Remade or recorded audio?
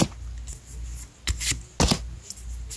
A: recorded